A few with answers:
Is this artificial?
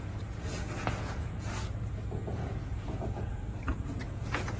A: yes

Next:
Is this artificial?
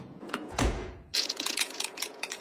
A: yes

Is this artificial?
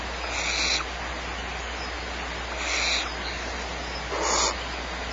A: no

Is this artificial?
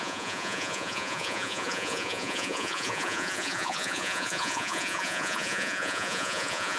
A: yes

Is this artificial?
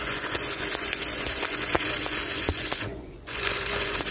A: yes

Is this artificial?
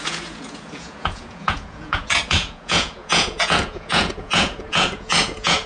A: yes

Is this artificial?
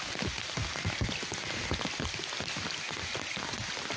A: no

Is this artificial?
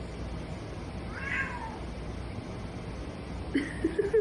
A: no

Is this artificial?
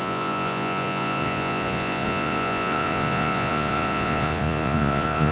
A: yes